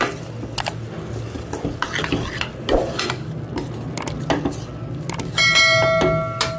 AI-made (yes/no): no